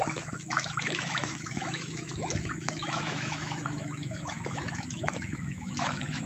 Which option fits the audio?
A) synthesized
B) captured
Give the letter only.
A